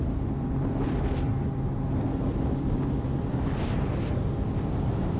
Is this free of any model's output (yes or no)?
yes